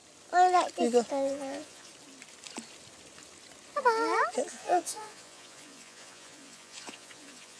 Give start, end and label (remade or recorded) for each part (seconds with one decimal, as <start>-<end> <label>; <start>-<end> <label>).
0.0-1.1 recorded; 1.1-1.9 remade; 1.9-4.5 recorded; 4.5-7.6 remade